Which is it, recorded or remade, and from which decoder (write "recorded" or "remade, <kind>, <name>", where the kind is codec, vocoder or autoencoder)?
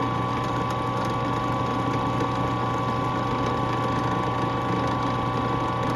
recorded